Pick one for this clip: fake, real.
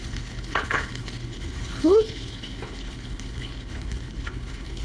fake